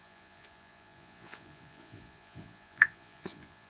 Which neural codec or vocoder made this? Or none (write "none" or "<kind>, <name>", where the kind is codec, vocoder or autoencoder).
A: vocoder, Vocos